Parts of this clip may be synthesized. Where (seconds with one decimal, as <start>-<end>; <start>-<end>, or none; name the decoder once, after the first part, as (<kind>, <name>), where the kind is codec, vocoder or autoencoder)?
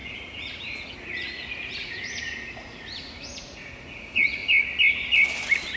0.0-4.4 (vocoder, Vocos)